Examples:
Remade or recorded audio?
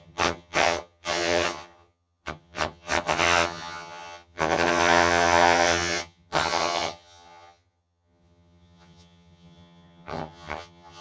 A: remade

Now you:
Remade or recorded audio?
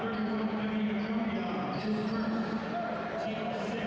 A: recorded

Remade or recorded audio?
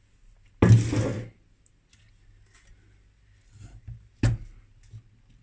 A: recorded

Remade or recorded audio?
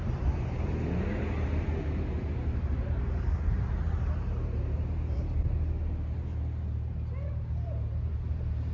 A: recorded